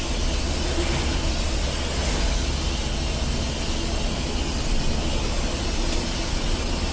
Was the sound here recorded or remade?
recorded